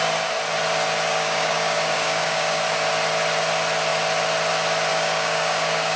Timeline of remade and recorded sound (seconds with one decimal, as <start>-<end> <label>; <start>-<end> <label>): 0.0-1.1 recorded; 1.1-2.6 remade; 2.6-4.9 recorded; 4.9-6.0 remade